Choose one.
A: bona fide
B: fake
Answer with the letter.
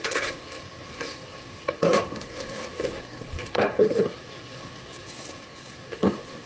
B